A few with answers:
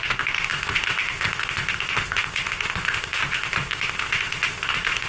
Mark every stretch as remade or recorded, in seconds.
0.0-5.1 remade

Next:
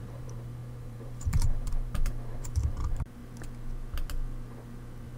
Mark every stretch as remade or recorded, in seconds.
0.0-3.2 remade; 3.2-5.2 recorded

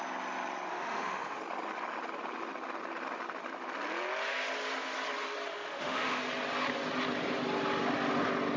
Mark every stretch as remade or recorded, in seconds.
0.0-0.7 recorded; 0.7-1.4 remade; 1.4-5.5 recorded; 5.5-6.2 remade; 6.2-8.6 recorded

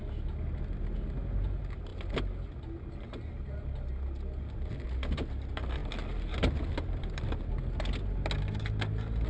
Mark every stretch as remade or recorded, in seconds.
0.0-9.3 recorded